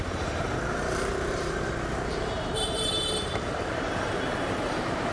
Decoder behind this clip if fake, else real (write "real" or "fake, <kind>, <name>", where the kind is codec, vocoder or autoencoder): fake, vocoder, BigVGAN v2